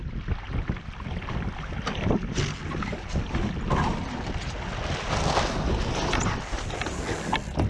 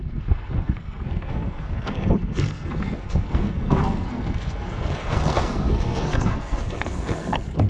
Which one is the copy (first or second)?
second